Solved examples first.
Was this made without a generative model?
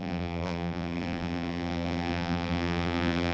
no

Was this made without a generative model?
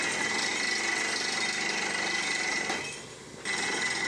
yes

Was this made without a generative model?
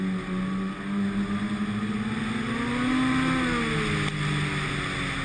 yes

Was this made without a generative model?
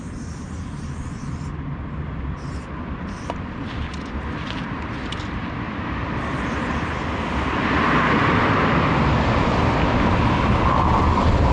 no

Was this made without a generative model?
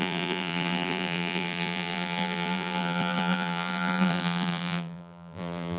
no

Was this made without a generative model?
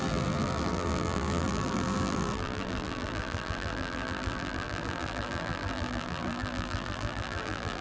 no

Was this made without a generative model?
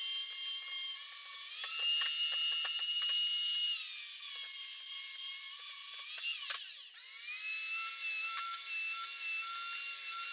yes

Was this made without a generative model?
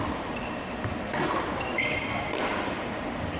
no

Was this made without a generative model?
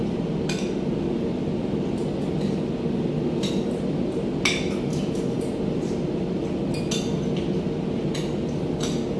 yes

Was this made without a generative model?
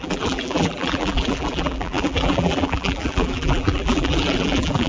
no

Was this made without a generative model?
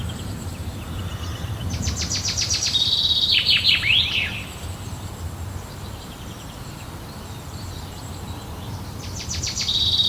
no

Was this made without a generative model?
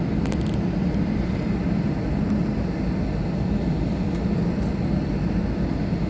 yes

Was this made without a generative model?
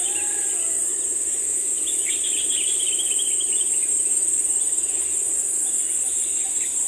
yes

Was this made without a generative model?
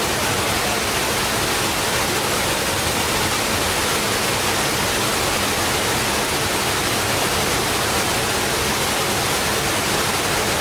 yes